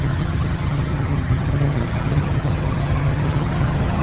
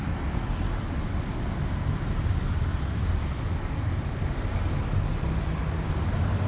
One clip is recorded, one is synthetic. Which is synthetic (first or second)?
first